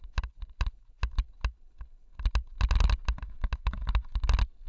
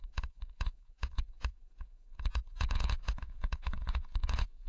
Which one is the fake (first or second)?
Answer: second